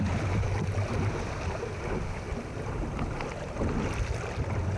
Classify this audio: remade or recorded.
recorded